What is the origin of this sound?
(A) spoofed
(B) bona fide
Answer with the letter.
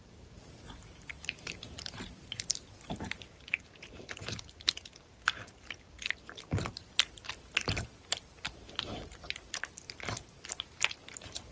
A